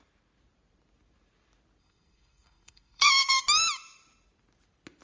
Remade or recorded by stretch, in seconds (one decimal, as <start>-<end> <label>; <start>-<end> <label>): 0.0-1.8 recorded; 1.8-3.4 remade; 3.4-5.0 recorded